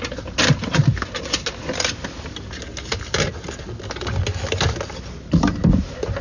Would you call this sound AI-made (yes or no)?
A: no